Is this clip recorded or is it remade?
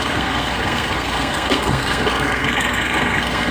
remade